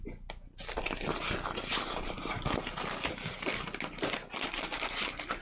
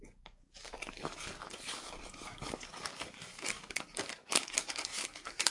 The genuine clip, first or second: first